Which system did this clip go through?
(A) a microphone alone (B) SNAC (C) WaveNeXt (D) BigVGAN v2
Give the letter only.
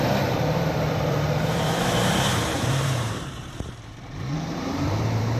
D